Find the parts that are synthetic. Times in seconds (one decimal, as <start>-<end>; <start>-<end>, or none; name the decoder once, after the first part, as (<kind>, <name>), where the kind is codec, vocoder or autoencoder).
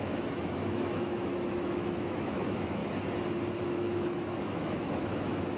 0.0-2.8 (autoencoder, DAC-VAE); 3.6-5.6